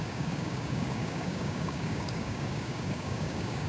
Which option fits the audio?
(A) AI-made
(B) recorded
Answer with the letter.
A